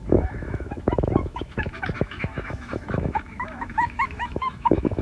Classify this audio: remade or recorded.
remade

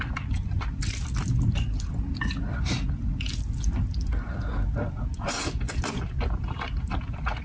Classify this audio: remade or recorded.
recorded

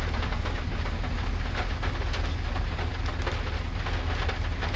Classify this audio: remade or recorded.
recorded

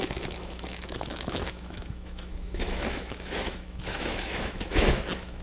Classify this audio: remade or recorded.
remade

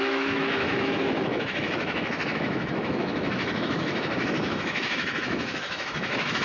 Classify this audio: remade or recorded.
remade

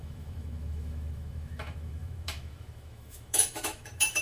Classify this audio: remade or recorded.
remade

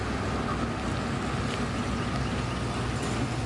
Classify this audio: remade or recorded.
recorded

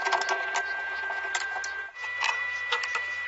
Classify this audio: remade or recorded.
recorded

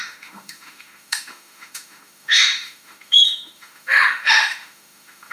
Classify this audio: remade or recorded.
remade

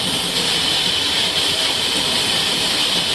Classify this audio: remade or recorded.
recorded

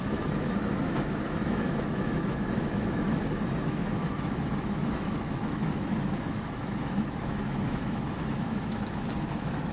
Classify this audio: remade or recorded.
remade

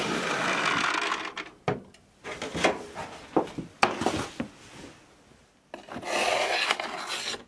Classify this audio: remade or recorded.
recorded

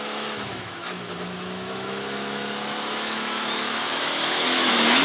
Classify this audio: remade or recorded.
remade